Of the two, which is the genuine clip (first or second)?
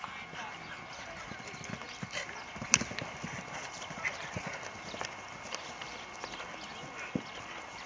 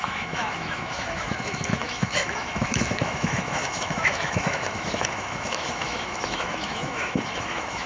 first